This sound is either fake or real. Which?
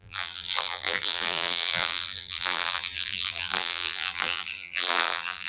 fake